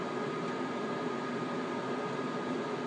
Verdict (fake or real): real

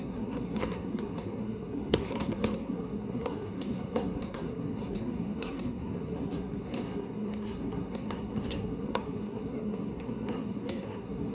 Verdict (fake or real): fake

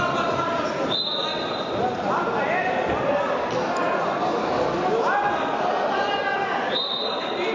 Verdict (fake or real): real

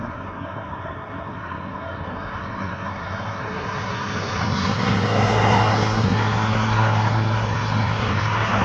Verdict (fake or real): fake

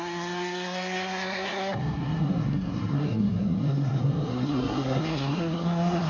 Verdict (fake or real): fake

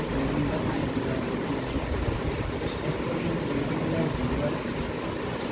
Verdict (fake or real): real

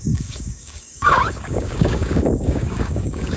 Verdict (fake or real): fake